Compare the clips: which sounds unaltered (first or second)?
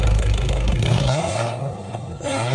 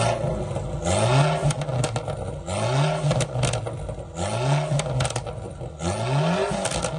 second